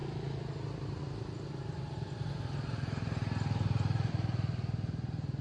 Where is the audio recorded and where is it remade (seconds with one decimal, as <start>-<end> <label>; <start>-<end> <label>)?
0.0-5.4 recorded